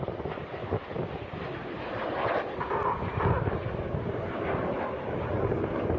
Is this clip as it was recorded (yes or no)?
yes